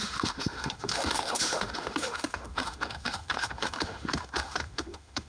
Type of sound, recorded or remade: remade